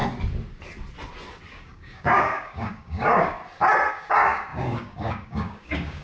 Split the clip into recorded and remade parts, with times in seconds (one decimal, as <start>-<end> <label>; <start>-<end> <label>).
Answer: 0.0-1.5 recorded; 1.5-3.4 remade; 3.4-3.9 recorded; 3.9-6.0 remade